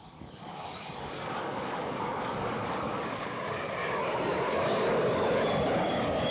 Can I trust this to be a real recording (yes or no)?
no